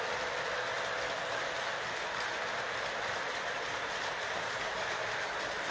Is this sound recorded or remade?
recorded